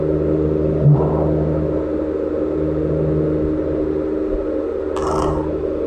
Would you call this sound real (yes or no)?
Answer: yes